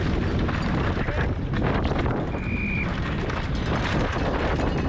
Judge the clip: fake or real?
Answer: real